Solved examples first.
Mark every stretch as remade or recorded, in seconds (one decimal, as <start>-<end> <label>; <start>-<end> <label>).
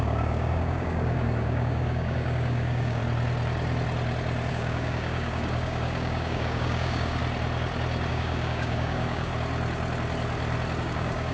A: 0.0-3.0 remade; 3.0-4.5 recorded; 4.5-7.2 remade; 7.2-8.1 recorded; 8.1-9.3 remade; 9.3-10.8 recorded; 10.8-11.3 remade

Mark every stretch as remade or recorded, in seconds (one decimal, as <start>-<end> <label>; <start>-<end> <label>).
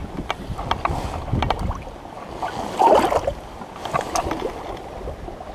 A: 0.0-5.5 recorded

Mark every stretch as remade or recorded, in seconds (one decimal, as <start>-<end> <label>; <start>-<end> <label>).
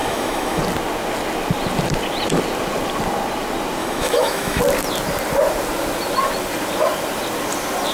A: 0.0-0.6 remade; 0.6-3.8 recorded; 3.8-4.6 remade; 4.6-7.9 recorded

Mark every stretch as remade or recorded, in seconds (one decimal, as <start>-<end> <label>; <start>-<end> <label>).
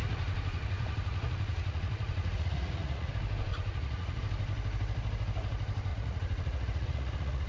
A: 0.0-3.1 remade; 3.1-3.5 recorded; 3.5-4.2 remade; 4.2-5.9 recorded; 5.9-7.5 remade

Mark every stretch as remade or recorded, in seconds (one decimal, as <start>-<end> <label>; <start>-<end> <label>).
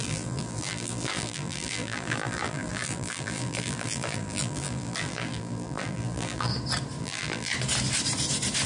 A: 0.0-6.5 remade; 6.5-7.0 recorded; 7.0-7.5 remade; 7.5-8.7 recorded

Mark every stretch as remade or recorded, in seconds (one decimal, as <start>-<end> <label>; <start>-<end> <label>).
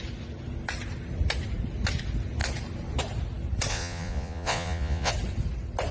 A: 0.0-3.7 recorded; 3.7-5.1 remade; 5.1-5.9 recorded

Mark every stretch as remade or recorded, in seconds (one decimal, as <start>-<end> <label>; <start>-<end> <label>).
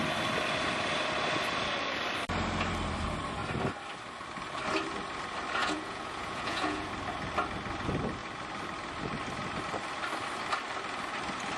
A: 0.0-5.6 recorded; 5.6-6.9 remade; 6.9-11.6 recorded